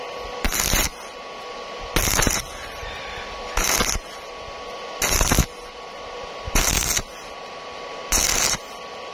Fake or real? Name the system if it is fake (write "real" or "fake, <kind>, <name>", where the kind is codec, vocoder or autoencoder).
real